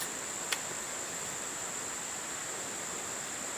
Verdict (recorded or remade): recorded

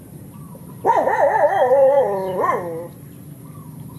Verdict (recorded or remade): recorded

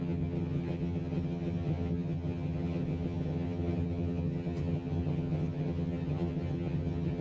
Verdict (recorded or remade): remade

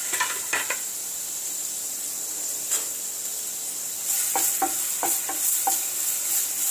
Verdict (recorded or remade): recorded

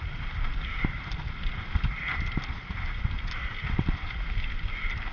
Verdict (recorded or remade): recorded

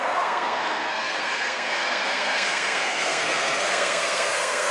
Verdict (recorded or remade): remade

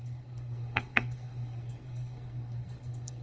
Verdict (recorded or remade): remade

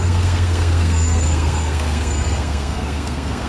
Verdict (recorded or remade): remade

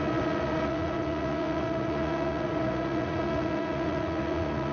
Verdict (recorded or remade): remade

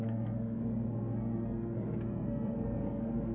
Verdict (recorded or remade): remade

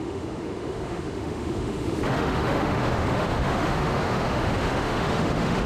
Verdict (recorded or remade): remade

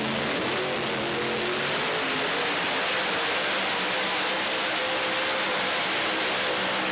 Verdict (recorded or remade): recorded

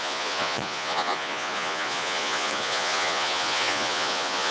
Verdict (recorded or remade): remade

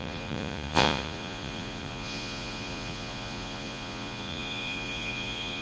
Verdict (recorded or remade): remade